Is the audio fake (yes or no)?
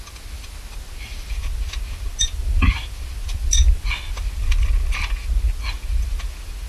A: no